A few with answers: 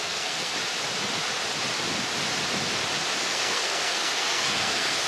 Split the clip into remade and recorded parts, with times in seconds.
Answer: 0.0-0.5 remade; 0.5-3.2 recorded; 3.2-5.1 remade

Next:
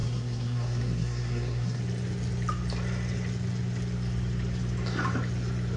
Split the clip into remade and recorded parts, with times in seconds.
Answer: 0.0-1.8 remade; 1.8-5.8 recorded

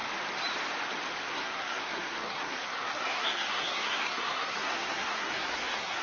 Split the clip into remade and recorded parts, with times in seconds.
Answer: 0.0-1.3 recorded; 1.3-6.0 remade

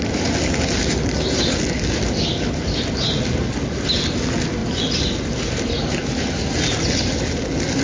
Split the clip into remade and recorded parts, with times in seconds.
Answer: 0.0-4.6 recorded; 4.6-7.1 remade; 7.1-7.8 recorded

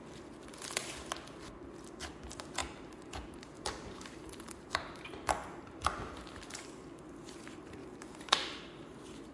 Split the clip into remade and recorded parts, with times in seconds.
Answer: 0.0-2.6 recorded; 2.6-6.4 remade; 6.4-7.8 recorded; 7.8-8.6 remade; 8.6-9.3 recorded

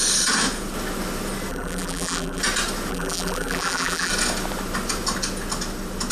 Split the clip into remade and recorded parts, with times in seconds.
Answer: 0.0-1.5 recorded; 1.5-2.4 remade; 2.4-2.9 recorded; 2.9-4.1 remade; 4.1-6.1 recorded

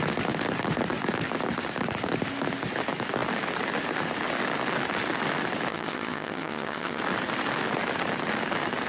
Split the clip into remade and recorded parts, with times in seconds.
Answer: 0.0-5.7 recorded; 5.7-7.0 remade; 7.0-8.9 recorded